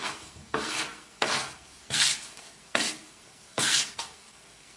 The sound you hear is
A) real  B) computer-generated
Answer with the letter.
B